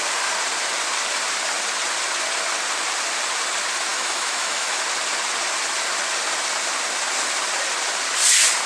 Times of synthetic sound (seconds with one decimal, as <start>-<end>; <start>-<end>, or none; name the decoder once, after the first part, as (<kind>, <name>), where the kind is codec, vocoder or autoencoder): 3.9-4.8 (autoencoder, DAC-VAE)